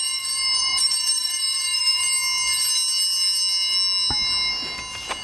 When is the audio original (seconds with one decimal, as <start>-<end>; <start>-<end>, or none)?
2.0-5.2